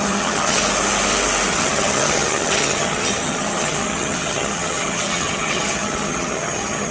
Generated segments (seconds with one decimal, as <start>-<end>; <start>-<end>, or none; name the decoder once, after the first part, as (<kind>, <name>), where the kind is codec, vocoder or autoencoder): 0.0-0.6 (vocoder, HiFi-GAN); 1.5-6.9

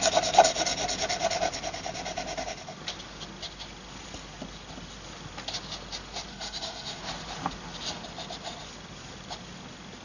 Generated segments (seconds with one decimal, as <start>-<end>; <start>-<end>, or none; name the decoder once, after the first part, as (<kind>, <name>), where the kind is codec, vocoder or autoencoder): 6.3-7.0 (codec, SNAC)

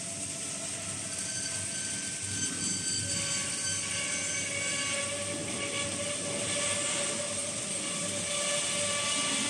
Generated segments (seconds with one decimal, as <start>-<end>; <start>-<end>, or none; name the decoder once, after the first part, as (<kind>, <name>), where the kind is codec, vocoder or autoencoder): none